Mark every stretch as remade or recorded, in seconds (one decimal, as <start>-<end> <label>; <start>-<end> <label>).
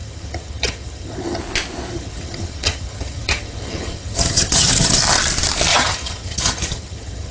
0.0-1.4 remade; 1.4-1.9 recorded; 1.9-5.0 remade; 5.0-5.7 recorded; 5.7-7.3 remade